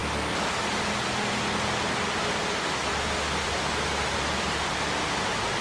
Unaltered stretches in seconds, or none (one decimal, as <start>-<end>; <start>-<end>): 0.0-2.8; 5.0-5.6